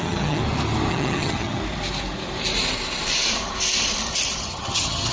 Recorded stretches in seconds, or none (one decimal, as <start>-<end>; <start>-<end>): 0.4-0.9; 1.6-4.4